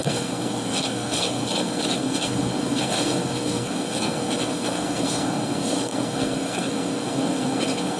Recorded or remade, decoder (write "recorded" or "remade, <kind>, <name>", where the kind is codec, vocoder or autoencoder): remade, codec, SNAC